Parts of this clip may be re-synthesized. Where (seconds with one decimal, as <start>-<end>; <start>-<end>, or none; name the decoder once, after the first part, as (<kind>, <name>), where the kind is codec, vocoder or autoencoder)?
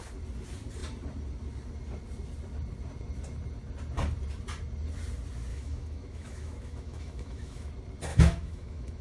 5.5-7.7 (autoencoder, DAC-VAE); 8.1-9.0